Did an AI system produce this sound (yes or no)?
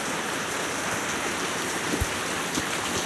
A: no